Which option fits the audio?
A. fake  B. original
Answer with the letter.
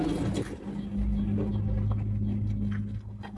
B